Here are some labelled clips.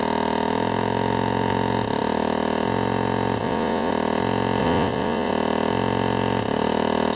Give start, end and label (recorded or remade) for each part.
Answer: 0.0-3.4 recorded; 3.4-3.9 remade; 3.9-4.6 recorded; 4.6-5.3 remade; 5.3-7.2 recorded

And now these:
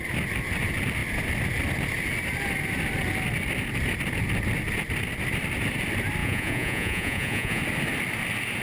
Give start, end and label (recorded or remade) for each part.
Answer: 0.0-6.2 recorded; 6.2-7.6 remade; 7.6-8.6 recorded

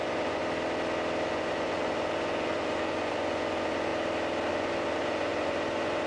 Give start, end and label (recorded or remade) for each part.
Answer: 0.0-0.4 remade; 0.4-1.3 recorded; 1.3-3.9 remade; 3.9-4.5 recorded; 4.5-6.1 remade

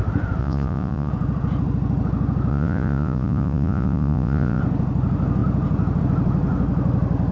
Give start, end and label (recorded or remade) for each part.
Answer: 0.0-0.4 recorded; 0.4-1.1 remade; 1.1-2.5 recorded; 2.5-4.6 remade; 4.6-7.3 recorded

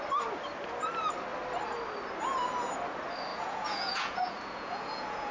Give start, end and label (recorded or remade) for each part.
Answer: 0.0-3.3 recorded; 3.3-5.3 remade

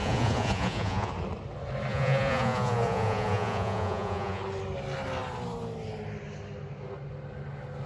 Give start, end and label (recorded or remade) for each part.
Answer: 0.0-1.1 remade; 1.1-1.9 recorded; 1.9-4.4 remade; 4.4-7.9 recorded

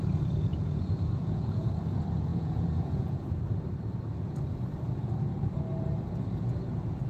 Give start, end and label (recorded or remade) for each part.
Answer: 0.0-0.5 recorded; 0.5-1.7 remade; 1.7-2.3 recorded; 2.3-3.3 remade; 3.3-7.1 recorded

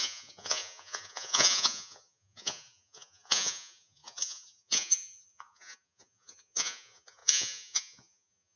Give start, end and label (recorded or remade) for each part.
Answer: 0.0-8.6 remade